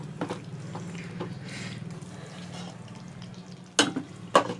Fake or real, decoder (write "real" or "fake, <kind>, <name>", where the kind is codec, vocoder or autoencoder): real